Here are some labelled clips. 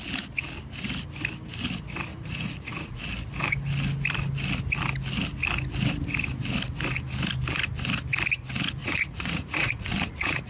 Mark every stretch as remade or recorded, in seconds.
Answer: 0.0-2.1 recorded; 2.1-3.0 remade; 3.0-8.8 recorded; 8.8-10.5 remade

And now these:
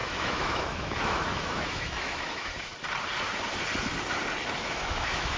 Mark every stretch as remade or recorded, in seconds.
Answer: 0.0-2.7 remade; 2.7-4.6 recorded; 4.6-5.4 remade

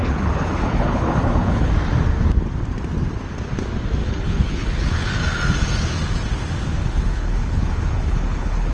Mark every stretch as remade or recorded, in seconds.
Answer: 0.0-1.7 remade; 1.7-4.0 recorded; 4.0-5.1 remade; 5.1-6.8 recorded; 6.8-8.7 remade